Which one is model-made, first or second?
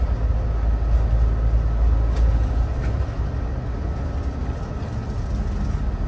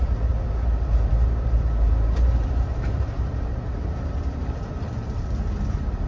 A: second